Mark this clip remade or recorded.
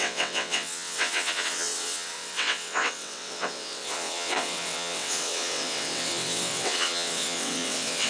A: remade